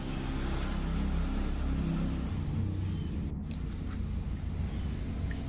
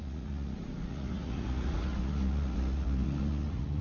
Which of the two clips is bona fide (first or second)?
first